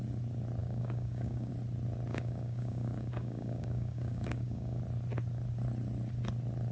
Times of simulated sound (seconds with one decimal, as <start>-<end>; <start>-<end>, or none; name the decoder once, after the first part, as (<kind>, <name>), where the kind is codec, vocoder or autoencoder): 0.6-1.5 (codec, DAC); 2.1-4.8